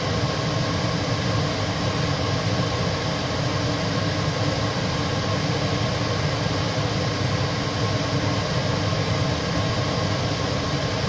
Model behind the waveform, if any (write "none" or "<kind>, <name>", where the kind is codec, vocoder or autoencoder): none